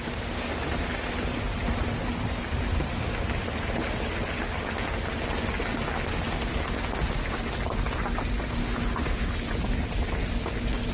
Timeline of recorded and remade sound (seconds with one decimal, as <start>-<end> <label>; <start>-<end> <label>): 0.0-8.6 recorded; 8.6-9.3 remade; 9.3-10.9 recorded